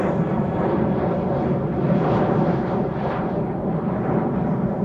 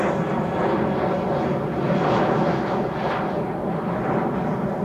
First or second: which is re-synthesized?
first